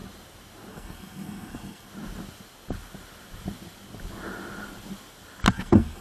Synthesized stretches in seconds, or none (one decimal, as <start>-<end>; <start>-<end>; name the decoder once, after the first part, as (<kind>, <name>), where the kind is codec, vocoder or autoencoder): 0.7-1.9 (codec, SNAC); 5.5-6.0